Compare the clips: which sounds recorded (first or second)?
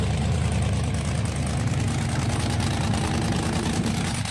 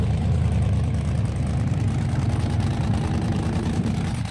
first